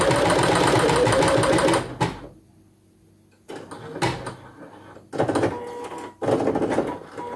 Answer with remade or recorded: recorded